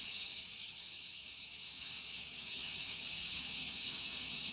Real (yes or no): no